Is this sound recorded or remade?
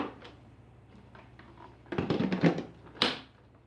remade